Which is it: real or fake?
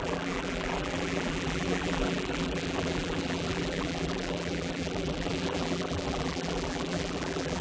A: fake